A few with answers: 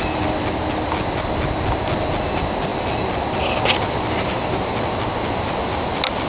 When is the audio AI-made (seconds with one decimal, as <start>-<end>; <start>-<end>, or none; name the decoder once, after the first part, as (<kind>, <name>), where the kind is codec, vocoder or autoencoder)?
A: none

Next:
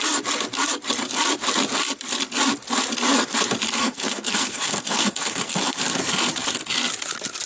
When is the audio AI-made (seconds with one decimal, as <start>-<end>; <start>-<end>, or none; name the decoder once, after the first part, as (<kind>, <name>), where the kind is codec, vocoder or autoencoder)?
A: 3.8-5.7 (codec, SNAC)

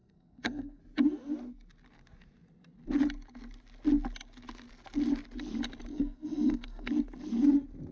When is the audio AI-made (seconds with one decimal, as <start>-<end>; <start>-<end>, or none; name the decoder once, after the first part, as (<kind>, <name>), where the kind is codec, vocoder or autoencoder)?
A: 0.0-0.8 (codec, SNAC); 5.9-6.9